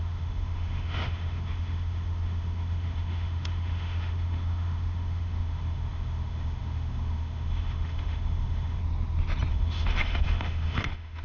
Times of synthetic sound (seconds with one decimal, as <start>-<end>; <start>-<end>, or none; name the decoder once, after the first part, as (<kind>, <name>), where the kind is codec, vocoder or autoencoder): 0.0-8.8 (autoencoder, DAC-VAE); 9.5-11.2